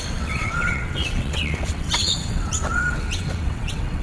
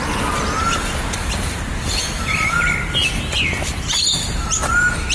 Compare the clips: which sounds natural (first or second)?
second